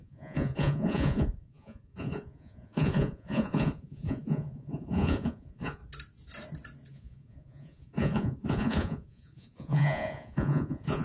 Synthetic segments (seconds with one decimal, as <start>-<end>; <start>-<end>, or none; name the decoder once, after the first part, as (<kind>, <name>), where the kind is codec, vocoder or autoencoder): 0.0-5.8 (vocoder, Vocos); 6.9-11.0